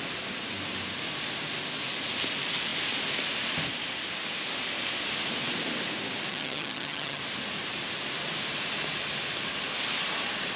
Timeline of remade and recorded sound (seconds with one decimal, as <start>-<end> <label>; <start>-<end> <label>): 0.0-6.3 recorded; 6.3-7.2 remade; 7.2-10.6 recorded